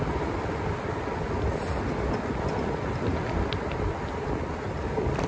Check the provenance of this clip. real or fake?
real